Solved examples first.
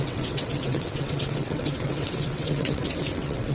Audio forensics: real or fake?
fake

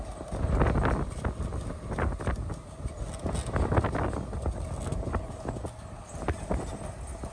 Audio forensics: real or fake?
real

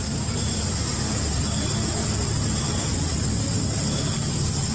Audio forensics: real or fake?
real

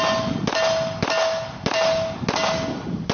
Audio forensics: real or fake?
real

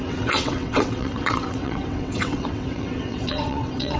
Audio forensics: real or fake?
fake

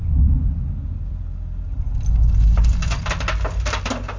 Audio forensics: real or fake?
real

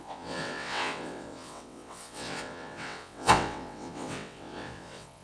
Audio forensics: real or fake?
fake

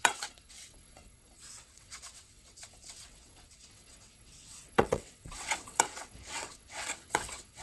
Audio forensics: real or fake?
fake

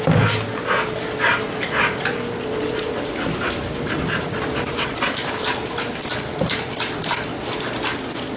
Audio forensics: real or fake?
real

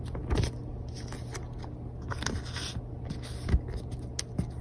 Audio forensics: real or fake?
real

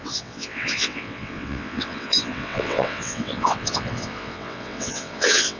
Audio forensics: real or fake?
fake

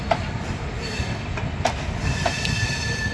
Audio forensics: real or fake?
real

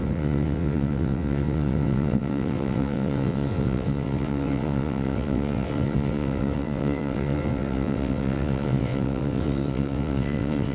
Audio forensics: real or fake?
fake